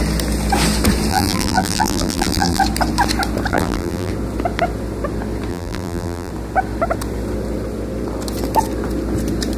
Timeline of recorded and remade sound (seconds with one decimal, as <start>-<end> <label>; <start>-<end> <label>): 0.0-1.1 recorded; 1.1-2.6 remade; 2.6-3.5 recorded; 3.5-4.1 remade; 4.1-5.5 recorded; 5.5-6.3 remade; 6.3-9.6 recorded